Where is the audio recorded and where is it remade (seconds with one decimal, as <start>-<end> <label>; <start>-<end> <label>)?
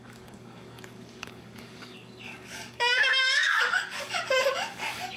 0.0-5.2 remade